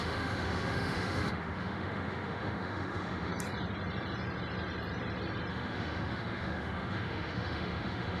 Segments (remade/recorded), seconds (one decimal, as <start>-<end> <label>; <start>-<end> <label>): 0.0-3.3 remade; 3.3-5.5 recorded; 5.5-8.2 remade